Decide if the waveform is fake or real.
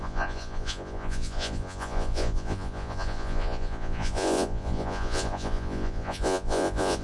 fake